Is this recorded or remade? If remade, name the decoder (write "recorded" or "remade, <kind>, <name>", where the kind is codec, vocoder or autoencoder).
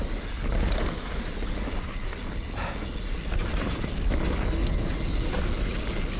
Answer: recorded